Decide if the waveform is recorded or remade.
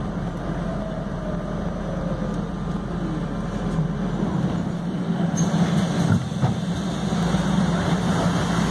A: recorded